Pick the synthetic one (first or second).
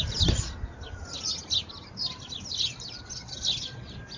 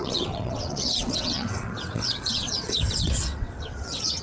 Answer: second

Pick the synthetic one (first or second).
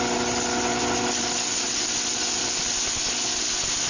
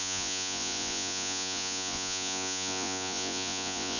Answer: second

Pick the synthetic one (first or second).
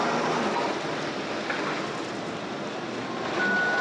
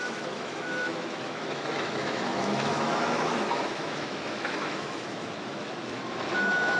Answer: second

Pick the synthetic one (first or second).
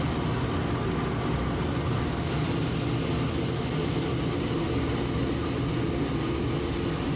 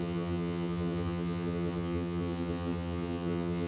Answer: second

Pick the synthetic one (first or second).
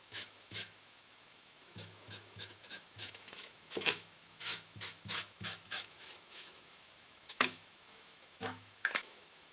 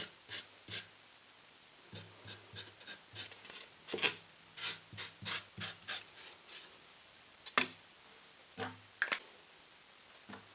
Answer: first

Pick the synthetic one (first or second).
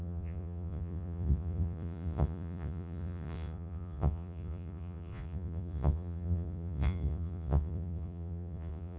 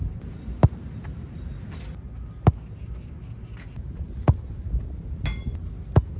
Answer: first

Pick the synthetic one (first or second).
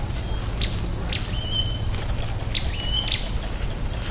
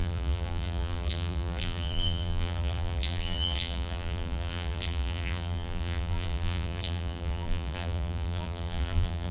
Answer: second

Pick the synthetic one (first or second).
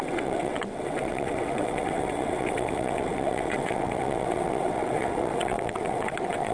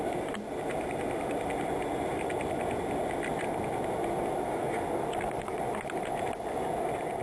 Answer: first